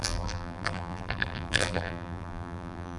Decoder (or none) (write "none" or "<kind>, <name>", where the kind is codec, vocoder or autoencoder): vocoder, BigVGAN v2